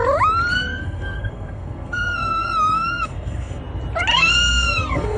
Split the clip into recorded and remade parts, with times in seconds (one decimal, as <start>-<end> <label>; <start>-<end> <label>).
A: 0.0-0.5 recorded; 0.5-3.6 remade; 3.6-4.1 recorded; 4.1-5.2 remade

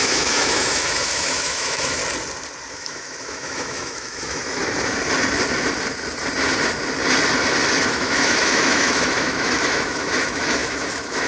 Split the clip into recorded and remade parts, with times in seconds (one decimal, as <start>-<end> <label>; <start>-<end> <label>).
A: 0.0-2.0 remade; 2.0-2.7 recorded; 2.7-4.6 remade; 4.6-7.8 recorded; 7.8-11.3 remade

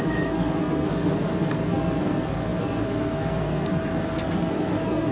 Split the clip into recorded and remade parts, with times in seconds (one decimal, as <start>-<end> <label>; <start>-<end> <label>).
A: 0.0-5.1 remade